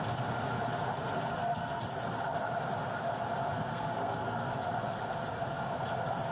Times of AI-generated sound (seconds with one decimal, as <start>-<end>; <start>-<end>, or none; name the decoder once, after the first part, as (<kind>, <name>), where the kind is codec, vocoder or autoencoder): 1.3-1.9 (codec, SNAC); 3.7-4.5